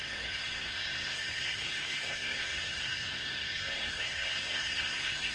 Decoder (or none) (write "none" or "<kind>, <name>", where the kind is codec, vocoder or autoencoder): codec, SNAC